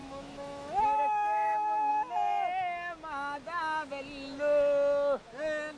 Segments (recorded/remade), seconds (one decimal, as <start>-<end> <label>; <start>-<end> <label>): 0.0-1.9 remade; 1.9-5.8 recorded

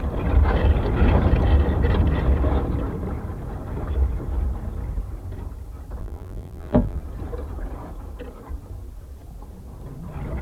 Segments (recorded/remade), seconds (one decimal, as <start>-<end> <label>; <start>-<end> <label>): 0.0-6.0 recorded; 6.0-7.0 remade; 7.0-10.4 recorded

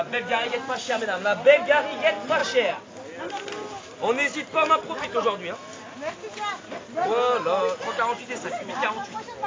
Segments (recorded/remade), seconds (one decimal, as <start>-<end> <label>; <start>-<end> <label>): 0.0-9.5 recorded

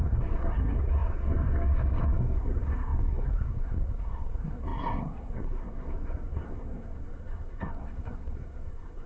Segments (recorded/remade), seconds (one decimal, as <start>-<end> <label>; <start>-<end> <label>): 0.0-9.1 remade

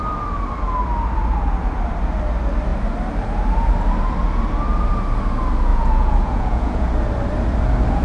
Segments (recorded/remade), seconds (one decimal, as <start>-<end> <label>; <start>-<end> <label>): 0.0-5.7 recorded; 5.7-6.9 remade; 6.9-8.0 recorded

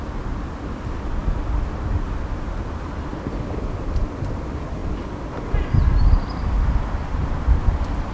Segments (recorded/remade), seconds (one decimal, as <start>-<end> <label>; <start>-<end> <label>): 0.0-8.1 recorded